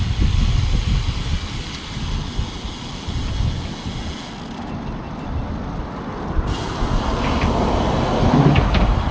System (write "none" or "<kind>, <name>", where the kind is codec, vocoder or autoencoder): none